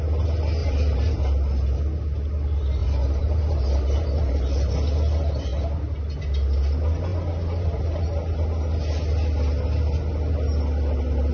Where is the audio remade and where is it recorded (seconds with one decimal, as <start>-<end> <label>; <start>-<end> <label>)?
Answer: 0.0-0.6 recorded; 0.6-1.2 remade; 1.2-2.8 recorded; 2.8-4.7 remade; 4.7-7.1 recorded; 7.1-8.0 remade; 8.0-11.3 recorded